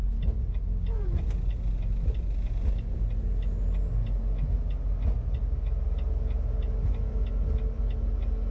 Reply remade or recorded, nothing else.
recorded